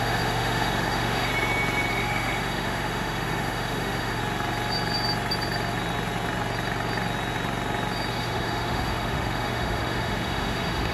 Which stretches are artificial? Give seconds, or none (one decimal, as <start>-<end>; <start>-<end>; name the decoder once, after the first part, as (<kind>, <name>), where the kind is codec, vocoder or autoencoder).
0.0-1.3 (autoencoder, DAC-VAE); 1.9-4.2; 8.1-10.9